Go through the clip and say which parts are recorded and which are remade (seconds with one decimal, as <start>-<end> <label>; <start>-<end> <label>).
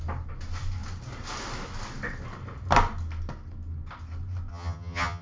0.0-4.5 recorded; 4.5-5.2 remade